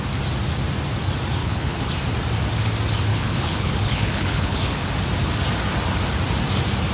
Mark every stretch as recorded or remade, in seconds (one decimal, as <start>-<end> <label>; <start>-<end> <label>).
0.0-1.4 recorded; 1.4-1.9 remade; 1.9-3.1 recorded; 3.1-4.9 remade; 4.9-6.9 recorded